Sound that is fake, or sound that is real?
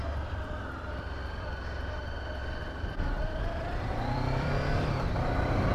fake